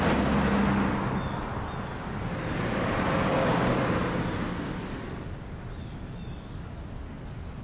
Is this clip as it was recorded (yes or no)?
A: yes